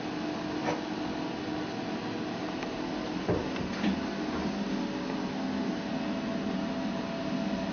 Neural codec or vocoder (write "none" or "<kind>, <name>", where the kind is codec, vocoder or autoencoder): none